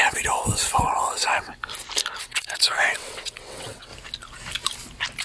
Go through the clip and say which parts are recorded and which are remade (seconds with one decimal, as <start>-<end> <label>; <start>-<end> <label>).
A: 0.0-1.5 remade; 1.5-2.2 recorded; 2.2-3.9 remade; 3.9-5.2 recorded